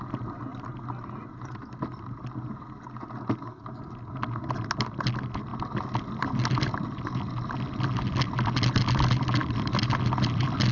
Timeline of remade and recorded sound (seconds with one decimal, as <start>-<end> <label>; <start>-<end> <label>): 0.0-10.7 recorded